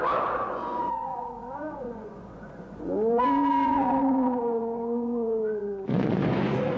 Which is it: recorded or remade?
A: remade